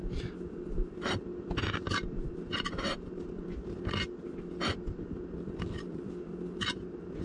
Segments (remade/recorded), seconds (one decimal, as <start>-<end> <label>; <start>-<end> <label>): 0.0-0.7 recorded; 0.7-1.3 remade; 1.3-2.3 recorded; 2.3-2.9 remade; 2.9-6.5 recorded; 6.5-7.2 remade